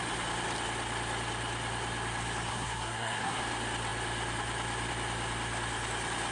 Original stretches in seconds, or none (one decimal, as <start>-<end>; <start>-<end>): 0.0-2.5; 3.4-6.3